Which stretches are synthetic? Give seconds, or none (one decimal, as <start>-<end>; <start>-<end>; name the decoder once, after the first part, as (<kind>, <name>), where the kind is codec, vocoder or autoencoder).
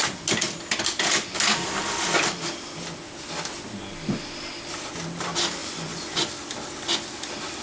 5.6-6.3 (vocoder, Vocos)